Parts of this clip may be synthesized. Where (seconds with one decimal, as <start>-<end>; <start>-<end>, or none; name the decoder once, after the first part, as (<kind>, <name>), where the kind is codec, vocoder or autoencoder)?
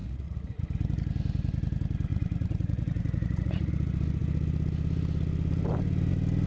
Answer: 0.0-0.6 (vocoder, Vocos); 2.1-3.7